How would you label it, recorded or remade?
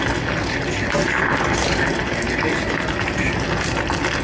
recorded